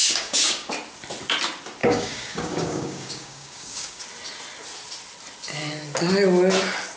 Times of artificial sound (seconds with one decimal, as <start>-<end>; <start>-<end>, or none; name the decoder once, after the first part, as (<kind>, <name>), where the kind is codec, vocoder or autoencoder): 0.0-0.7 (codec, DAC); 1.8-4.0